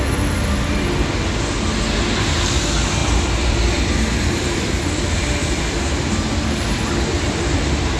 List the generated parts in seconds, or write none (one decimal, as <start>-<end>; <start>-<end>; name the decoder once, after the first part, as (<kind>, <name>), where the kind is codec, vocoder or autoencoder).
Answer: 3.0-5.6 (vocoder, BigVGAN v2)